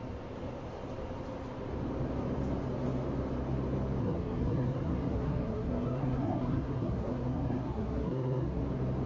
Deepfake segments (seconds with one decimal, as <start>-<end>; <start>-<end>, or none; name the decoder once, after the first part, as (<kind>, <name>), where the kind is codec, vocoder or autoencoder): 4.0-8.6 (codec, SNAC)